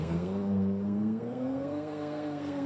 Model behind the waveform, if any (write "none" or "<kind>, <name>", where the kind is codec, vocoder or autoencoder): codec, SNAC